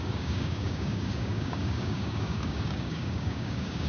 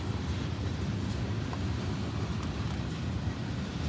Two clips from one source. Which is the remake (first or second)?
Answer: first